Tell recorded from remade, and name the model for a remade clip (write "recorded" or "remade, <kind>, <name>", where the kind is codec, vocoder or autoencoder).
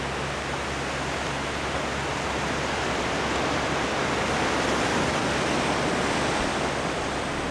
recorded